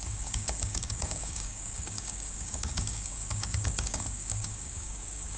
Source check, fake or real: fake